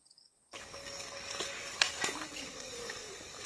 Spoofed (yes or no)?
yes